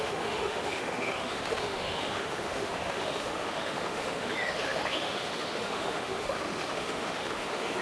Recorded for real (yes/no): no